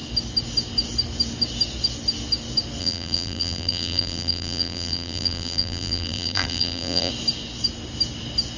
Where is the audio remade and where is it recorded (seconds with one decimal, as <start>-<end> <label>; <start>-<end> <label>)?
0.0-2.8 recorded; 2.8-7.1 remade; 7.1-8.6 recorded